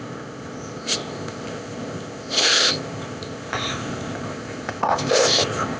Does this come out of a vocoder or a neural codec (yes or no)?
yes